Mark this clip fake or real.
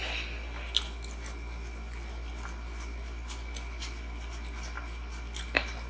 real